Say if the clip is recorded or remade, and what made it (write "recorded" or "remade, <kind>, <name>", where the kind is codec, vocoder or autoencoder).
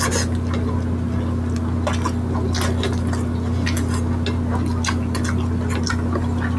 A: recorded